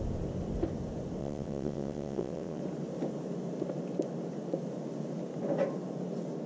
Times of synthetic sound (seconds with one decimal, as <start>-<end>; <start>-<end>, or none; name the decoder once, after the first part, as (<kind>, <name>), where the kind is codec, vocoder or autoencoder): 1.2-2.6 (vocoder, WaveNeXt)